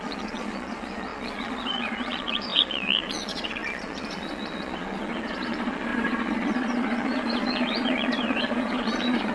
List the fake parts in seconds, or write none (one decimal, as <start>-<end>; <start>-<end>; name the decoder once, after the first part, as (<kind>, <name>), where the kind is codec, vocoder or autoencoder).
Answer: 0.0-9.3 (vocoder, Vocos)